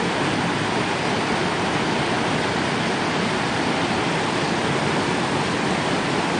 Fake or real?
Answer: real